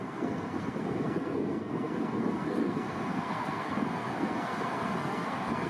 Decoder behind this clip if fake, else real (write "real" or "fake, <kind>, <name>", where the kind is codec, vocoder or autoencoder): fake, codec, SNAC